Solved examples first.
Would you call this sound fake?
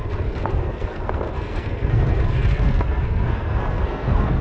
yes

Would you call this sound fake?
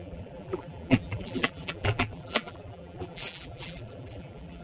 yes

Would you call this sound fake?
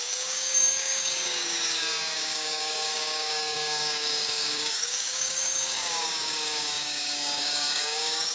yes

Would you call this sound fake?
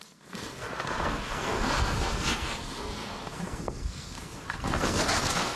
yes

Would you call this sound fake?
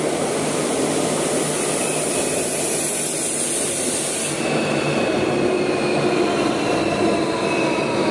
no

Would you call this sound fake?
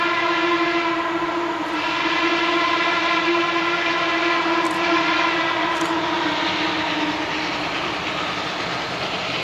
no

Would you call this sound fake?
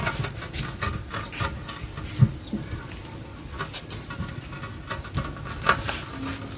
no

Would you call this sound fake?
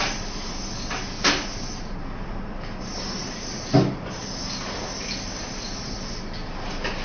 no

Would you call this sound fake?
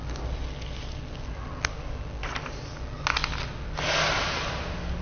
no